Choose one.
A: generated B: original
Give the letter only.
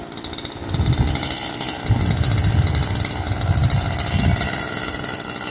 B